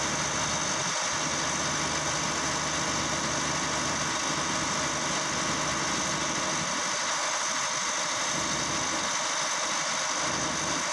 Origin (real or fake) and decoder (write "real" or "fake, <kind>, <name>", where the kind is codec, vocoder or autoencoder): real